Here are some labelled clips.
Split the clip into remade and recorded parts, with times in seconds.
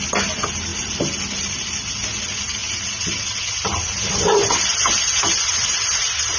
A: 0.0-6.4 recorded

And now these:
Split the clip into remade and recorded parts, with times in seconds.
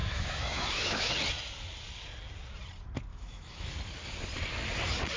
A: 0.0-1.1 remade; 1.1-3.1 recorded; 3.1-3.7 remade; 3.7-5.2 recorded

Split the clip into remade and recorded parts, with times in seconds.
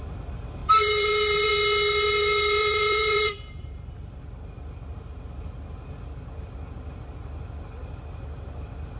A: 0.0-0.6 recorded; 0.6-1.5 remade; 1.5-2.6 recorded; 2.6-4.2 remade; 4.2-9.0 recorded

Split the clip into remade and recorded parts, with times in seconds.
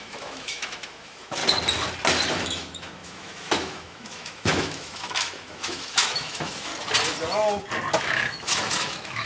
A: 0.0-1.4 remade; 1.4-2.3 recorded; 2.3-6.7 remade; 6.7-8.0 recorded; 8.0-9.3 remade